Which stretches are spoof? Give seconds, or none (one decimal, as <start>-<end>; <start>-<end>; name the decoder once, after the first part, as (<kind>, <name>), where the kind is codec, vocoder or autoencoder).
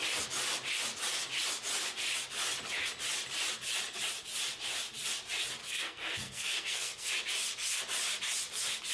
5.6-7.1 (codec, SNAC)